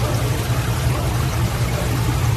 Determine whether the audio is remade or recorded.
recorded